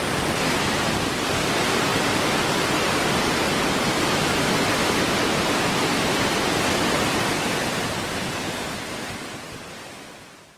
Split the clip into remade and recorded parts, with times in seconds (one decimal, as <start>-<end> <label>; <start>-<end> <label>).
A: 0.0-10.6 recorded